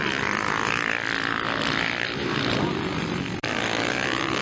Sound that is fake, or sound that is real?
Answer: real